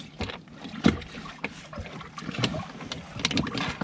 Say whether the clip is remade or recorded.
recorded